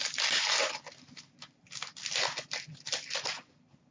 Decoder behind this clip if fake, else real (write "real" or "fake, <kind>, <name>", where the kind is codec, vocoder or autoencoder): real